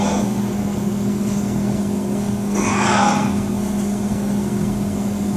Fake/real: fake